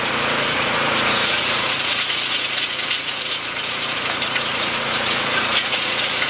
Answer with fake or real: fake